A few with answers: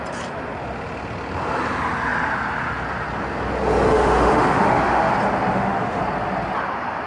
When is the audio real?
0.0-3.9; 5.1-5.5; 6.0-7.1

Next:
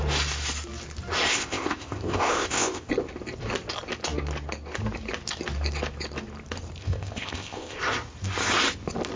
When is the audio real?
0.0-1.3; 2.9-6.8; 7.8-9.2